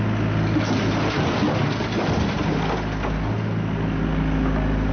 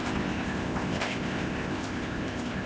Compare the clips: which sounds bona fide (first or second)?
first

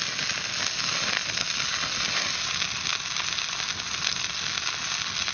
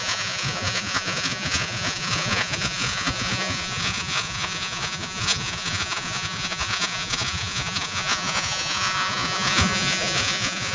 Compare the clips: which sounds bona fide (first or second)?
first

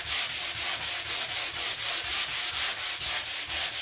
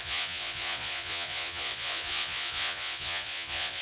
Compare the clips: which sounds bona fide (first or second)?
first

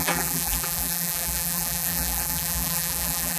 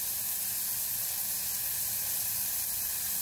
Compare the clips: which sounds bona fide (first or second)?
second